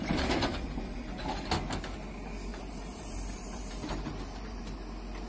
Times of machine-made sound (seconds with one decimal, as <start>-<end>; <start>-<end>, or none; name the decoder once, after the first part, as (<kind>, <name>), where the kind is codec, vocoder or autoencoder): 2.5-4.6 (vocoder, BigVGAN v2)